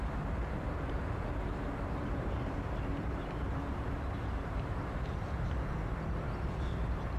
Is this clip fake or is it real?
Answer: fake